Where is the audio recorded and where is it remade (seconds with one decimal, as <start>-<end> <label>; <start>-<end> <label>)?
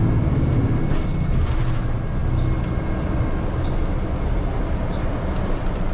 0.0-5.9 recorded